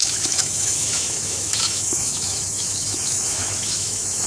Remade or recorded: remade